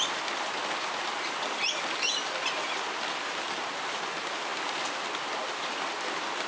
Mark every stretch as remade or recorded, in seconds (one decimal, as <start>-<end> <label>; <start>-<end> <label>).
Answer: 0.0-6.5 recorded